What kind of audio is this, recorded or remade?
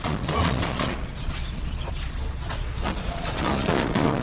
remade